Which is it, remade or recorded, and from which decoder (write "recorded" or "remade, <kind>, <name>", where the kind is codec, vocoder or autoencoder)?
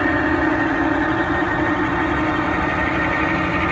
recorded